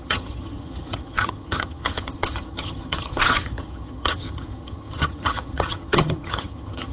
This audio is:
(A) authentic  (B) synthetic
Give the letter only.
B